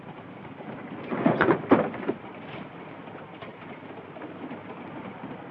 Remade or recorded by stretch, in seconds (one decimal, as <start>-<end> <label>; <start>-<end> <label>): 0.0-1.1 recorded; 1.1-1.6 remade; 1.6-5.5 recorded

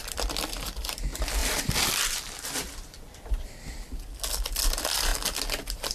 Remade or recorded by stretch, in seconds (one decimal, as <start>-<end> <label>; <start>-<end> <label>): 0.0-0.8 remade; 0.8-1.4 recorded; 1.4-3.9 remade; 3.9-5.9 recorded

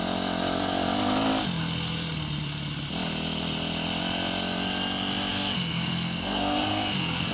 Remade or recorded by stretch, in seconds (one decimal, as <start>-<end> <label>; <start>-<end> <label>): 0.0-5.3 recorded; 5.3-7.3 remade

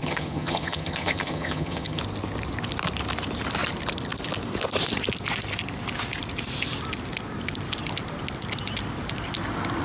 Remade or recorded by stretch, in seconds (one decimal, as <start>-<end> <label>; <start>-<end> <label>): 0.0-2.0 remade; 2.0-9.8 recorded

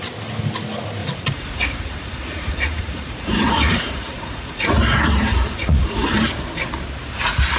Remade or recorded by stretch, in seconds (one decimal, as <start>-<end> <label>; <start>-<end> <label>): 0.0-1.0 recorded; 1.0-4.8 remade; 4.8-5.3 recorded; 5.3-6.1 remade; 6.1-7.6 recorded